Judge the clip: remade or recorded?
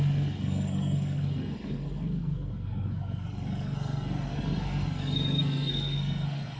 remade